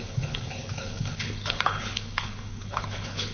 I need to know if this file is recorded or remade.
remade